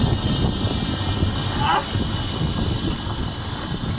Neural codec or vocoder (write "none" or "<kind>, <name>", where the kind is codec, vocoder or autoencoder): none